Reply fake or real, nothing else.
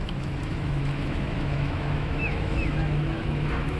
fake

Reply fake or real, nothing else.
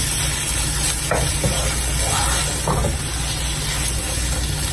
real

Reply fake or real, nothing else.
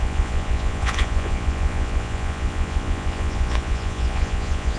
fake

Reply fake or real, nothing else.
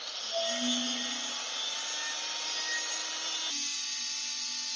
real